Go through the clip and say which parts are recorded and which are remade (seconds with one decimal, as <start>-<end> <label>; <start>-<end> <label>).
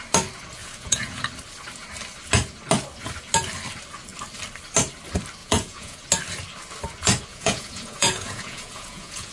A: 0.0-0.6 recorded; 0.6-1.2 remade; 1.2-5.4 recorded; 5.4-6.0 remade; 6.0-7.3 recorded; 7.3-9.3 remade